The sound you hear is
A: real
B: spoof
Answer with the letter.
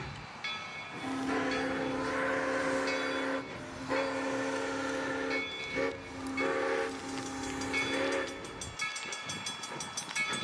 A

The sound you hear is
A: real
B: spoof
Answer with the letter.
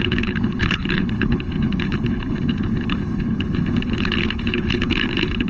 B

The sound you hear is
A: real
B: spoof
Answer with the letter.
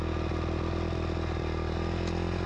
A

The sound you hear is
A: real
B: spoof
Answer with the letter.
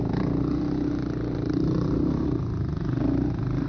A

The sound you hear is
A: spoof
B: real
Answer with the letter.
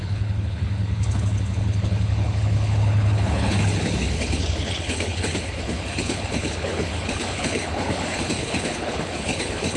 A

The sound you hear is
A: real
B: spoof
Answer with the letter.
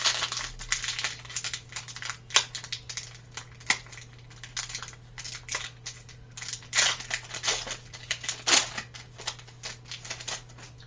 A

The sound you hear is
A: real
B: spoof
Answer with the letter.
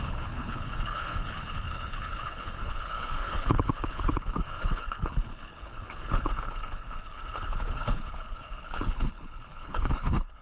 B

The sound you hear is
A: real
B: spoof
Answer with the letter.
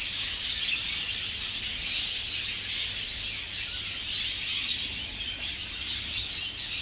A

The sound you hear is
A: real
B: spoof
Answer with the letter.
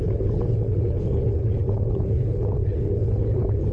B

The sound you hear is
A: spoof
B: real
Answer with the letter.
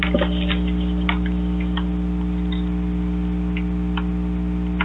B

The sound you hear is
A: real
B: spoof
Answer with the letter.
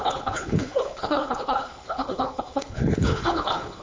B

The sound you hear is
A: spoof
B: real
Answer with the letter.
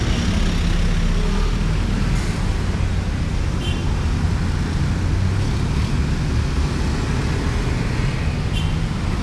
B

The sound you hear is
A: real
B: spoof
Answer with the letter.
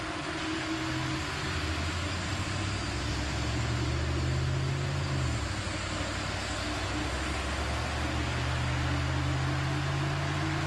A